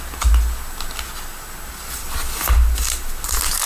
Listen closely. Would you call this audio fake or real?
real